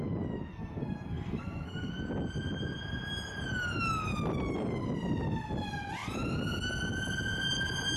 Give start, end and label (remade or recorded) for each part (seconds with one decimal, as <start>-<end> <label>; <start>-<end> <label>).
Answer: 0.0-0.5 recorded; 0.5-1.9 remade; 1.9-8.0 recorded